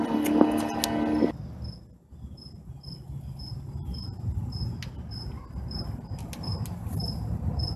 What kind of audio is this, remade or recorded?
recorded